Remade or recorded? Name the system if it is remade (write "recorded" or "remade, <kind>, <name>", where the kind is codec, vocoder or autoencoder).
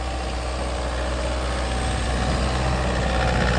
recorded